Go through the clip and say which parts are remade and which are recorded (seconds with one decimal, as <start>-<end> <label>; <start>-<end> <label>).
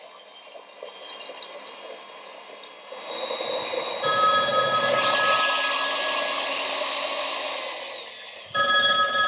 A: 0.0-9.3 recorded